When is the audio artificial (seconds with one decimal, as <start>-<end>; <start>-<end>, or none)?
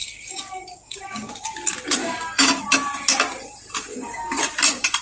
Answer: 0.0-1.3; 2.0-2.6; 3.9-4.4